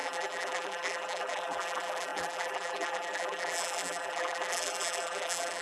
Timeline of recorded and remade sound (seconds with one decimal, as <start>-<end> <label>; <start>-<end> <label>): 0.0-5.6 remade